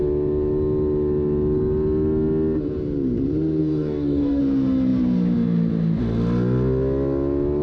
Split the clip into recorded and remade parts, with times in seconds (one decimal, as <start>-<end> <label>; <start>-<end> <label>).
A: 0.0-3.6 recorded; 3.6-4.4 remade; 4.4-7.6 recorded

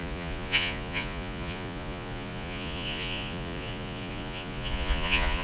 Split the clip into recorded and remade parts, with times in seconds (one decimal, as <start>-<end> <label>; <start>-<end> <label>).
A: 0.0-5.4 remade

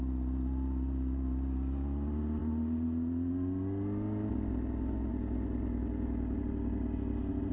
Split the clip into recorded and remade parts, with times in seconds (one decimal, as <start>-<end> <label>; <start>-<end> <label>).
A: 0.0-7.5 recorded

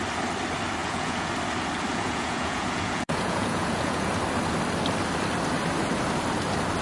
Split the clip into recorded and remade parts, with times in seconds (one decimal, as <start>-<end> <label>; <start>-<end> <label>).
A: 0.0-0.8 recorded; 0.8-1.3 remade; 1.3-1.9 recorded; 1.9-4.1 remade; 4.1-6.8 recorded

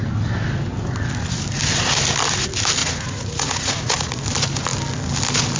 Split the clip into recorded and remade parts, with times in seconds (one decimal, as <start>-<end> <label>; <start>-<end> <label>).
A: 0.0-2.8 recorded; 2.8-4.2 remade; 4.2-5.6 recorded

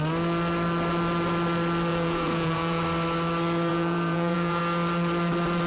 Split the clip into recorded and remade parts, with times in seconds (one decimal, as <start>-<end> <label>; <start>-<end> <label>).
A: 0.0-1.9 recorded; 1.9-2.8 remade; 2.8-3.7 recorded; 3.7-4.6 remade; 4.6-5.7 recorded